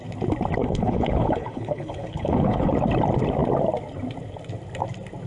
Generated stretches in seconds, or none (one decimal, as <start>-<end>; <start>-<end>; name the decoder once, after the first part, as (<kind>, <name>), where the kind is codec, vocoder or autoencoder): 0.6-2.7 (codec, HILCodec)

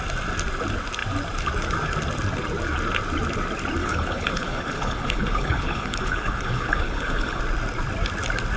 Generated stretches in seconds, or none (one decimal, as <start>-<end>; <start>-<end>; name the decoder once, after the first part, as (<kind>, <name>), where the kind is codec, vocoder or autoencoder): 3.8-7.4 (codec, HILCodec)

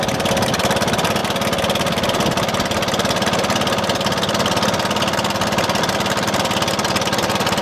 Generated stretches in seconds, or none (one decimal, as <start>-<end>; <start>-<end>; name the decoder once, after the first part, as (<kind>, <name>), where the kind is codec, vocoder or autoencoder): 0.0-1.2 (vocoder, BigVGAN v2); 5.8-7.6

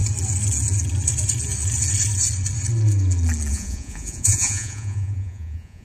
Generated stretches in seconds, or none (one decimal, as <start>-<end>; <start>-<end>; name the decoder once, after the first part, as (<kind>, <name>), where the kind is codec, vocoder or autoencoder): 3.5-5.8 (vocoder, Vocos)